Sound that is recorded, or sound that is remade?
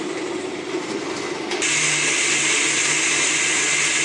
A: recorded